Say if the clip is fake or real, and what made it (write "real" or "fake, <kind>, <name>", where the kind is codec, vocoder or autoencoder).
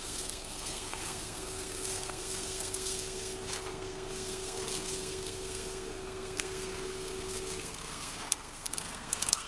fake, codec, SNAC